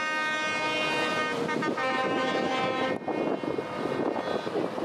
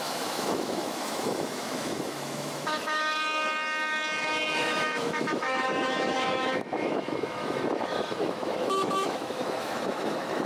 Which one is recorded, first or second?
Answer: first